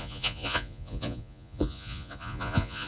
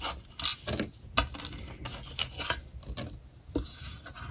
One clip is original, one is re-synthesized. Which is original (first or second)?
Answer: second